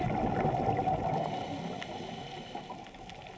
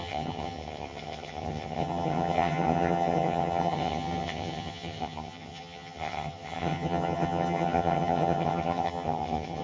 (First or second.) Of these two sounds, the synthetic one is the second